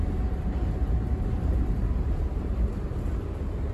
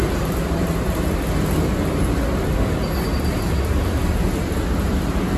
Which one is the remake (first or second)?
first